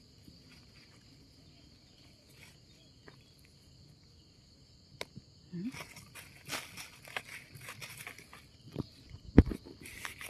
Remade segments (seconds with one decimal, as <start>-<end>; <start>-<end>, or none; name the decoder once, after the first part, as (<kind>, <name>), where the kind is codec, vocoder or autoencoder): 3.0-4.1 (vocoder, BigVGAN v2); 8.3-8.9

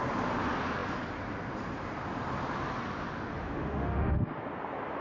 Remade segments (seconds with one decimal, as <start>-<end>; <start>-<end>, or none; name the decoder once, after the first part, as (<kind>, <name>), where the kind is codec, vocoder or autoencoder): 3.4-4.4 (autoencoder, DAC-VAE)

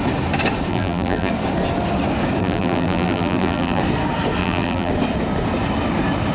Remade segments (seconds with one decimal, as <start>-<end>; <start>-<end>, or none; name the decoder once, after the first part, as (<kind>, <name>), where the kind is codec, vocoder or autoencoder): 0.7-1.3 (vocoder, BigVGAN v2); 2.4-3.8; 4.4-4.9

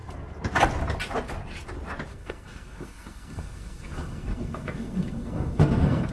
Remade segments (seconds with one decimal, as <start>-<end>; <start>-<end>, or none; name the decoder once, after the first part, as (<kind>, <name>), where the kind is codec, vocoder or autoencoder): 2.1-6.1 (codec, SNAC)

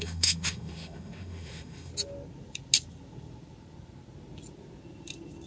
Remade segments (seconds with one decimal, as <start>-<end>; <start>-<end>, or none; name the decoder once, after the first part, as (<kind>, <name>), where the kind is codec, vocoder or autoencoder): 0.0-1.9 (autoencoder, DAC-VAE)

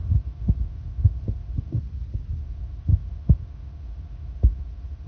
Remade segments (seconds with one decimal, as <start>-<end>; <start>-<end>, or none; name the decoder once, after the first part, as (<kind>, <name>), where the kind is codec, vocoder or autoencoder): 0.0-1.8 (autoencoder, DAC-VAE); 2.4-5.1

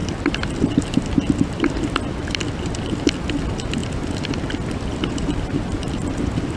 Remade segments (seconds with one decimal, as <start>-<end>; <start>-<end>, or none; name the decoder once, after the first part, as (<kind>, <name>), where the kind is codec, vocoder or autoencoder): none